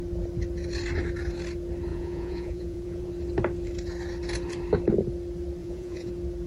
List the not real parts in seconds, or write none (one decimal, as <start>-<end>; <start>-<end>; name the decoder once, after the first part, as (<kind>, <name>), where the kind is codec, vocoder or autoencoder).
1.9-3.1 (vocoder, Vocos); 5.6-6.1